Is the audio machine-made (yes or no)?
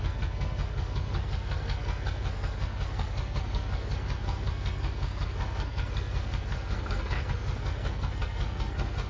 yes